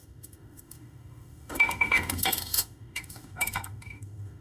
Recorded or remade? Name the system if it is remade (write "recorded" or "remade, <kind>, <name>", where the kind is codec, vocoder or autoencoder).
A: remade, autoencoder, DAC-VAE